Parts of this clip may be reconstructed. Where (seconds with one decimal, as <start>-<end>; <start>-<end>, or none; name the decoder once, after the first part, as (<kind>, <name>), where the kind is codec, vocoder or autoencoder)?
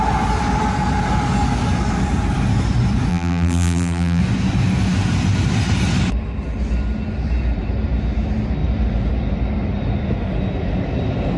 3.1-4.2 (vocoder, BigVGAN v2)